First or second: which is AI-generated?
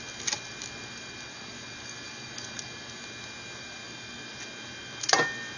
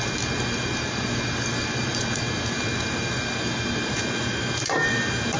second